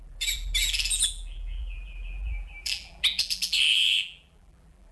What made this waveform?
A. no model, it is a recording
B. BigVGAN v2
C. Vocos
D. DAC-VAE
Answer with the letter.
B